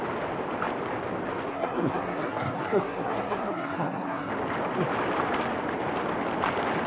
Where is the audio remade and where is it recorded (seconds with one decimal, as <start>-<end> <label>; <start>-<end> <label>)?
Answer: 0.0-1.5 recorded; 1.5-4.3 remade; 4.3-6.9 recorded